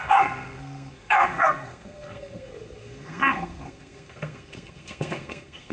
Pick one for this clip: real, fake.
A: fake